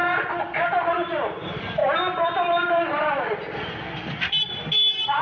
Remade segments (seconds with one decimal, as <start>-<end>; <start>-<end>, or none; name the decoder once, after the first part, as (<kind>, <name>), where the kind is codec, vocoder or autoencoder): 0.9-5.2 (vocoder, BigVGAN v2)